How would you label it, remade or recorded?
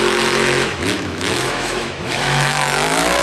remade